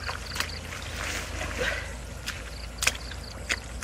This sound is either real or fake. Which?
real